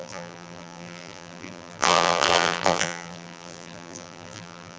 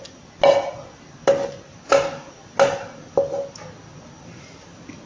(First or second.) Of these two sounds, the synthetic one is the first